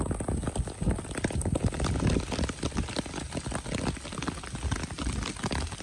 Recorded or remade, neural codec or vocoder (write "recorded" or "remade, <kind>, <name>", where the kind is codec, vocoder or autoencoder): recorded